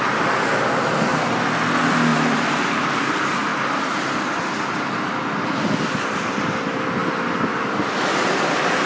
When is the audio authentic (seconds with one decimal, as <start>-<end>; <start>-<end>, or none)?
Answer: 0.0-2.1; 3.1-8.9